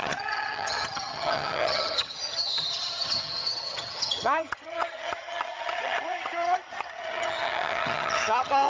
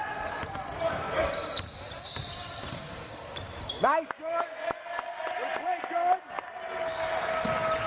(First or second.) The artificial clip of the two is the first